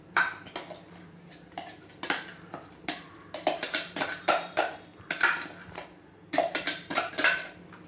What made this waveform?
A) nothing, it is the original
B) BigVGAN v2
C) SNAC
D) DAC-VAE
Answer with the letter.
B